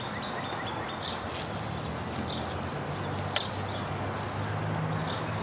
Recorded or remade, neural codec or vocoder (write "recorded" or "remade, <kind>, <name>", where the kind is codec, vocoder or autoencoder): recorded